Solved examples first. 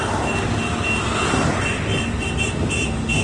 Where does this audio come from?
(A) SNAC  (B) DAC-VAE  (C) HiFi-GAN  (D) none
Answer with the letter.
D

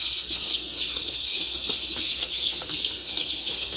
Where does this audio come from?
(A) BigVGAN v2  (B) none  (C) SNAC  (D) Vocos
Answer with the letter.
C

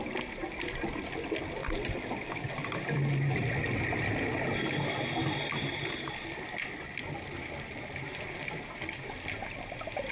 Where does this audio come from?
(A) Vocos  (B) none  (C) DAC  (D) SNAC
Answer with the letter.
B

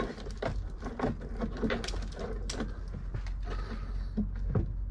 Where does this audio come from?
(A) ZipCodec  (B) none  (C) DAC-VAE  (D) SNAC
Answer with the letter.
B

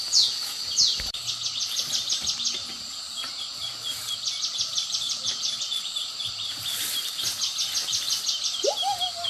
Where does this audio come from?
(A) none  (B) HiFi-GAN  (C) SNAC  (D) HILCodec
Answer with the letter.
A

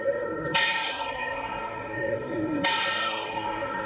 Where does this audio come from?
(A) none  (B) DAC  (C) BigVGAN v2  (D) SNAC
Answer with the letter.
D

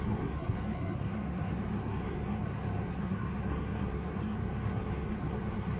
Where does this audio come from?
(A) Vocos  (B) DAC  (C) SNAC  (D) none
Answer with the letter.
C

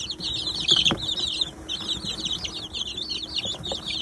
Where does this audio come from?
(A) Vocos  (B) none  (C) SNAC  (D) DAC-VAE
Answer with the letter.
B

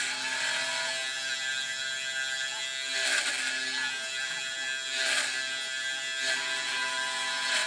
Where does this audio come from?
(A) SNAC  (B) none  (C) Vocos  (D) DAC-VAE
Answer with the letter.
B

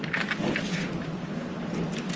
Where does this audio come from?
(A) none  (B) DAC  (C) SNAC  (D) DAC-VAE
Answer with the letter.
A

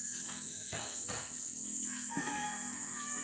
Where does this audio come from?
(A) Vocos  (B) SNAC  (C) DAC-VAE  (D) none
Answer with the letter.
B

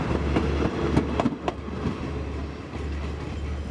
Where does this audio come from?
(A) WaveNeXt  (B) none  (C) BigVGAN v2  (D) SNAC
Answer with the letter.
B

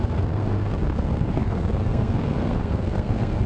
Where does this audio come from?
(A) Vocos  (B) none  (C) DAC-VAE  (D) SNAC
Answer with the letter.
D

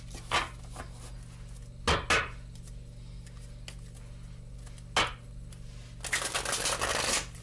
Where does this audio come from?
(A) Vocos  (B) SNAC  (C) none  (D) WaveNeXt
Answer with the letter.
C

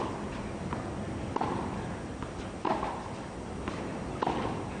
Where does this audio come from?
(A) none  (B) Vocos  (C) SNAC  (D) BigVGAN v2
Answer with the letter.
A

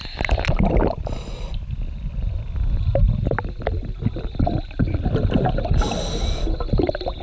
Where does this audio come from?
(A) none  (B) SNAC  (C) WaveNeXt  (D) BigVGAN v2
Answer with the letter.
A